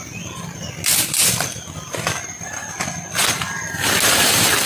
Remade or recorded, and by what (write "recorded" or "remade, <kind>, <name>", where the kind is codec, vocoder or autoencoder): recorded